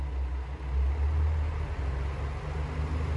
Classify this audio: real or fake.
real